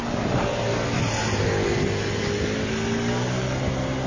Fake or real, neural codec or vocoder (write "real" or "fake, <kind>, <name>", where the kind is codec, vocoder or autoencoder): real